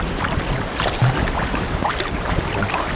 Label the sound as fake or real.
real